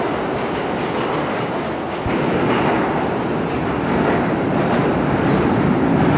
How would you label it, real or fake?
real